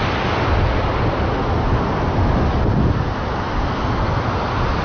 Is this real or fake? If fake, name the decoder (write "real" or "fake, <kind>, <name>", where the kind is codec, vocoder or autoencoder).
real